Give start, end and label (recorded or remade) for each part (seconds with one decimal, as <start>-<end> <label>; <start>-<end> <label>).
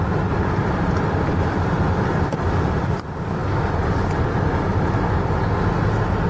0.0-6.3 recorded